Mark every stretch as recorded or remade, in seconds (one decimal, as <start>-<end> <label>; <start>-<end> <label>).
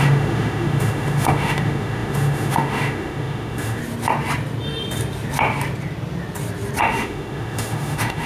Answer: 0.0-3.8 remade; 3.8-6.8 recorded; 6.8-8.3 remade